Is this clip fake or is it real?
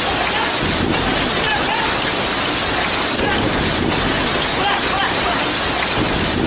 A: real